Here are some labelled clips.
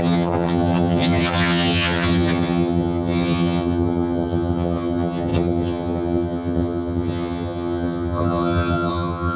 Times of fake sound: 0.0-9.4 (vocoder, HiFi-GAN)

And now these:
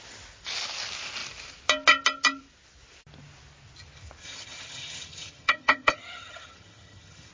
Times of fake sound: 4.2-7.3 (vocoder, HiFi-GAN)